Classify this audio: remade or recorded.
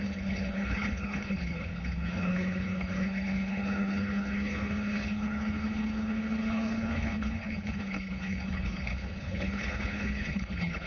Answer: remade